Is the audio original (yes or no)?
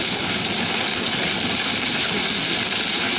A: yes